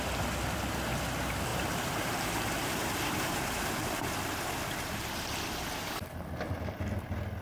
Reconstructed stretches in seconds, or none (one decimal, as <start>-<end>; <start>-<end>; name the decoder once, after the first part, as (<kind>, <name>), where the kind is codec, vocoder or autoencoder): 1.5-3.7 (vocoder, BigVGAN v2)